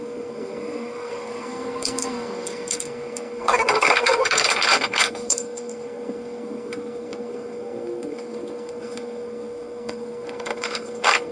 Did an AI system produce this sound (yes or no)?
yes